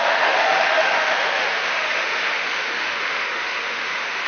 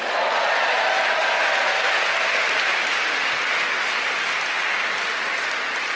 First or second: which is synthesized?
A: first